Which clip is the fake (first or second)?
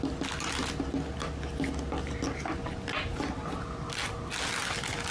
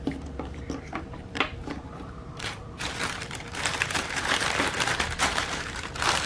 second